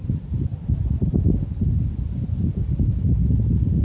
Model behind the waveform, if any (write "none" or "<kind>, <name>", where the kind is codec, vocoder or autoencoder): none